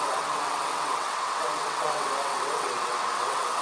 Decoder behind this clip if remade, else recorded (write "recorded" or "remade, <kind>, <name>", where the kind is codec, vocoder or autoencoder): remade, vocoder, WaveNeXt